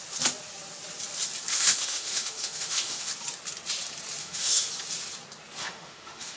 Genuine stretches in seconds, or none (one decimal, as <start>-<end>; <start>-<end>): 0.0-1.5; 3.1-4.2; 4.7-5.6

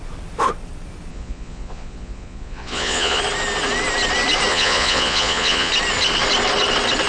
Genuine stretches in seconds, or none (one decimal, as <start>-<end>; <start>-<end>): 0.0-1.1; 3.2-4.5; 5.7-7.1

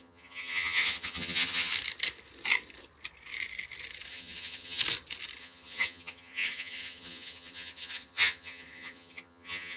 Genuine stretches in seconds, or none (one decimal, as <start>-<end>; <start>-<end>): 1.7-4.1; 4.8-5.4

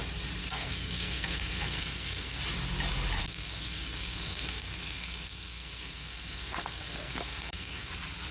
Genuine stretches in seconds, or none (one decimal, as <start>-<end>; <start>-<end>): 0.0-0.4; 2.4-3.2; 7.9-8.3